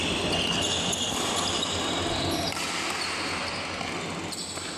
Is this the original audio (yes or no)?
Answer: yes